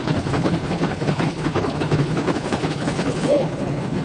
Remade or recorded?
remade